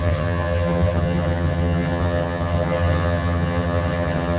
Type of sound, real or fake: fake